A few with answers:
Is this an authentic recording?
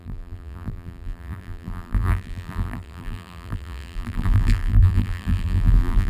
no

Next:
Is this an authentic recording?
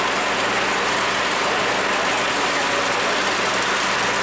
yes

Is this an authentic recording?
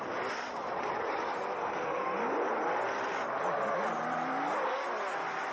yes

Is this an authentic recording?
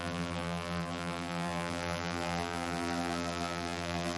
no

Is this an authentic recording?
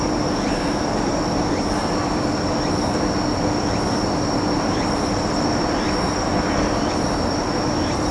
yes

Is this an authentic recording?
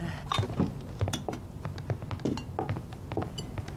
yes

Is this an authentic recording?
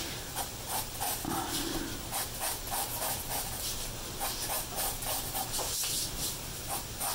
yes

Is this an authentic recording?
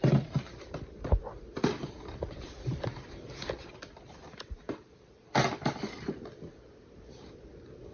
no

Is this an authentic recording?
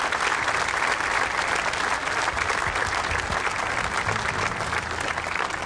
yes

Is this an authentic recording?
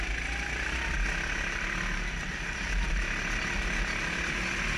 yes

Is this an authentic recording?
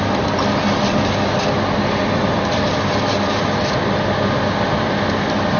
yes